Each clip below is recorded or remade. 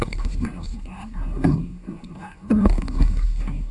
remade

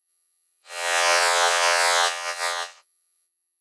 remade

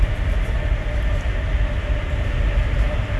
recorded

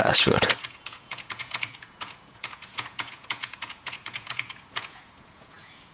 remade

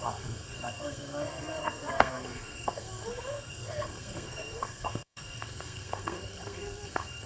remade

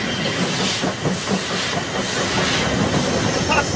recorded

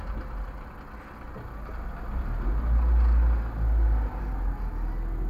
recorded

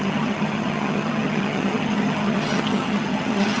remade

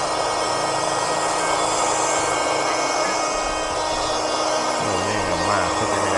recorded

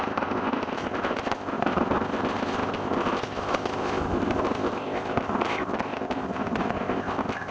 remade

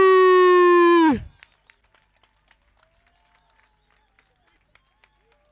recorded